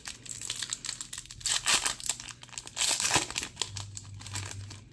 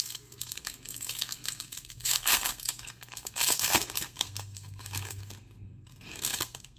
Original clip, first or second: first